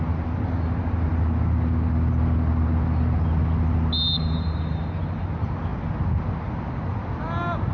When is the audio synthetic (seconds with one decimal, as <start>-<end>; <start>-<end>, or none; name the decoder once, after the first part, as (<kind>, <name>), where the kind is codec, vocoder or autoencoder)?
none